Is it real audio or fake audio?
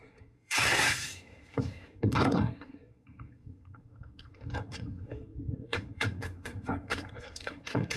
fake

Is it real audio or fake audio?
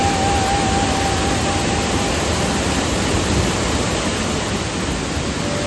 real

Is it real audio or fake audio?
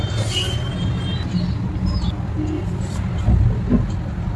real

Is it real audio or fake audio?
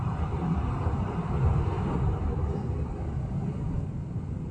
fake